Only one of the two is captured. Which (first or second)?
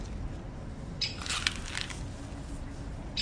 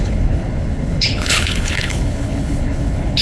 first